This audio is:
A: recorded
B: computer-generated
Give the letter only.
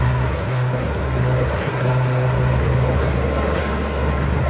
B